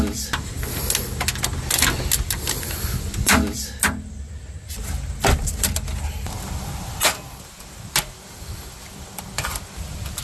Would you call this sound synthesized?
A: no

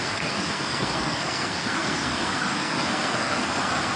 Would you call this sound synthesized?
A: yes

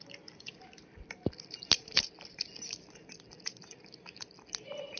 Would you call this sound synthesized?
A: no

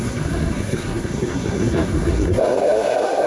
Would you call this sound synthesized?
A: yes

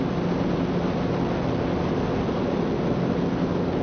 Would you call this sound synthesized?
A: no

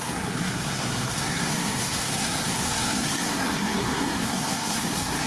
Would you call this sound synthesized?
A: yes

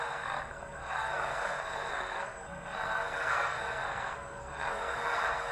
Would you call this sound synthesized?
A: yes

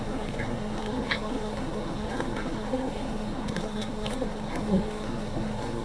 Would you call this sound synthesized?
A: yes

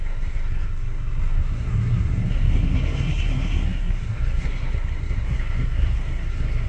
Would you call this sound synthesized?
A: yes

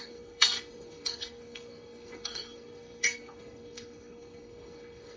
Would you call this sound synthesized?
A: yes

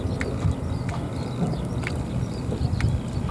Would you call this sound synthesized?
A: no